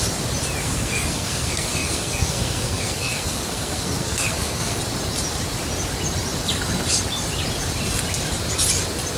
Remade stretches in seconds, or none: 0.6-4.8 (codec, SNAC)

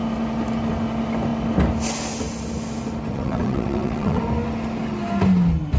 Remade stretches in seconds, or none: 3.1-4.2 (vocoder, WaveNeXt)

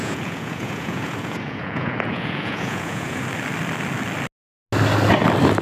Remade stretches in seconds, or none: 0.0-3.2 (vocoder, Vocos)

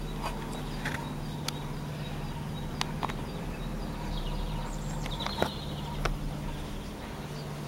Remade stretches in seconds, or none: 3.3-5.2 (vocoder, BigVGAN v2)

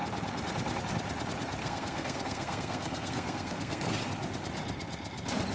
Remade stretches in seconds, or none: 1.6-4.0 (codec, SNAC)